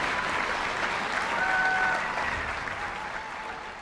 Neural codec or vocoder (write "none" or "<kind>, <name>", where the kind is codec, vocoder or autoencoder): none